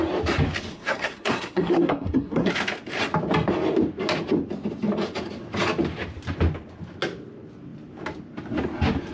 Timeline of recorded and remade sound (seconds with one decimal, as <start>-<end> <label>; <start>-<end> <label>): 0.0-0.7 recorded; 0.7-2.5 remade; 2.5-9.1 recorded